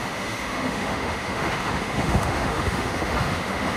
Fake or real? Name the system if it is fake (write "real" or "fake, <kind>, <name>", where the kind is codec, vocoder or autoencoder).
fake, autoencoder, DAC-VAE